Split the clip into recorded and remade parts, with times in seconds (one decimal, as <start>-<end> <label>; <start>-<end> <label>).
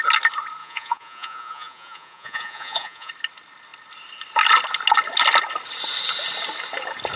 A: 0.0-0.6 recorded; 0.6-3.1 remade; 3.1-7.2 recorded